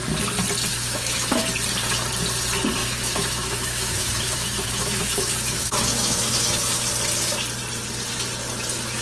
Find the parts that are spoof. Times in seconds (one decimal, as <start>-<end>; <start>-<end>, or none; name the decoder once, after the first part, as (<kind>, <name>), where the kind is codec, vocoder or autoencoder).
0.7-1.4 (autoencoder, DAC-VAE); 2.8-6.9